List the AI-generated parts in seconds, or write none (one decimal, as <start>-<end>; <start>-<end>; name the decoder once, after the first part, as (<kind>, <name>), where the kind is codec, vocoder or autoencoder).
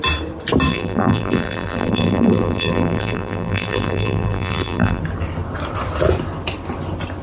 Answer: 0.7-5.0 (vocoder, BigVGAN v2)